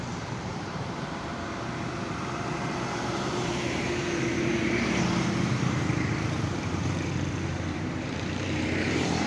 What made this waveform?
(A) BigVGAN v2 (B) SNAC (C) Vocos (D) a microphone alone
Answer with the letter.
A